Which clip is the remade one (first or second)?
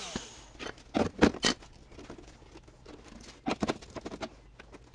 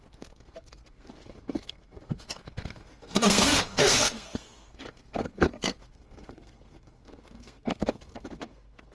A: second